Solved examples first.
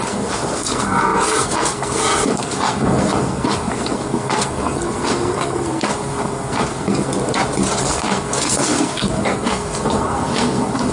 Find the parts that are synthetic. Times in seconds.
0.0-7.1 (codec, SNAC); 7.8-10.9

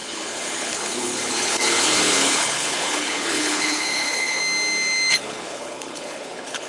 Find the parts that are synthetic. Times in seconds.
0.0-4.4 (codec, HILCodec); 5.1-6.7